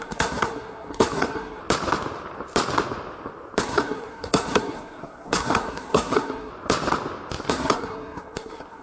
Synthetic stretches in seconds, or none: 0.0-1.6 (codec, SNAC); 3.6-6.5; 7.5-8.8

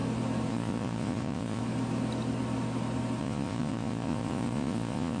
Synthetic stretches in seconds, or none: 0.5-1.6 (vocoder, Vocos); 3.2-5.2

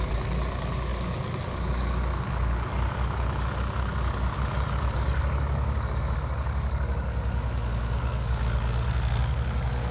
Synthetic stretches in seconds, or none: 0.0-9.9 (codec, DAC)

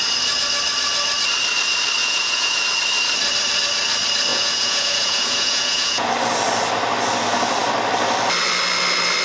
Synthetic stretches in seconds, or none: 2.0-2.6 (vocoder, Vocos); 4.3-6.1

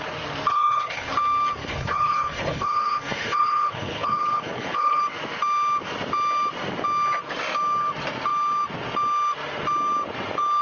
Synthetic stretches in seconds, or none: 0.5-1.1 (codec, HILCodec); 1.6-5.0

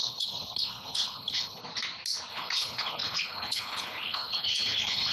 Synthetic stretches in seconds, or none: 0.0-1.6 (codec, HILCodec); 2.3-5.1

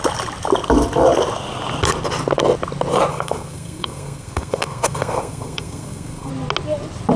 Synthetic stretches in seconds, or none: 3.1-6.3 (codec, SNAC)

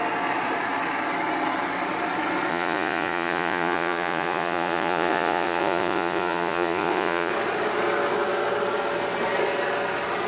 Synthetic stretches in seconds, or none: 2.5-7.3 (vocoder, Vocos)